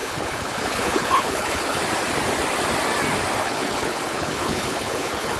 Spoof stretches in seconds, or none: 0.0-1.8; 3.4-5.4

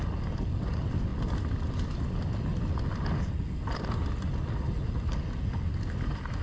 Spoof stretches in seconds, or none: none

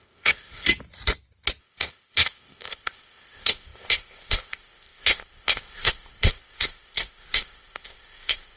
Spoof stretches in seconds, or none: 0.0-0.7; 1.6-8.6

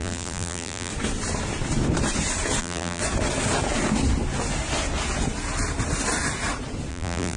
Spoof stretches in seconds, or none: 0.0-0.9; 2.6-3.0; 6.9-7.4